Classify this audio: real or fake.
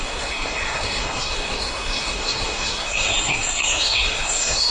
fake